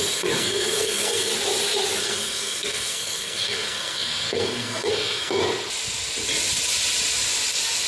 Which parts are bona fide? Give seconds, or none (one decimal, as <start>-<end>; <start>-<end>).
1.3-2.0; 5.4-7.9